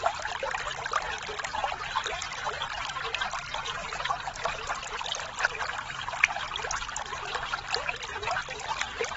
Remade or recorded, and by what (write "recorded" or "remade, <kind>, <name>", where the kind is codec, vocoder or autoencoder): recorded